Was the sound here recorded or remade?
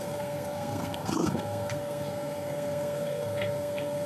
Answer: remade